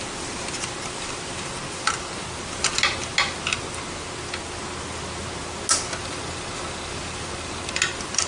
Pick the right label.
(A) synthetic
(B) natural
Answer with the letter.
B